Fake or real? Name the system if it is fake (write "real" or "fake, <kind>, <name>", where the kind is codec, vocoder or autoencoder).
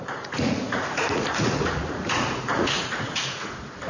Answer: fake, vocoder, Vocos